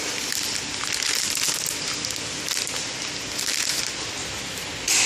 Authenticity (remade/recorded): recorded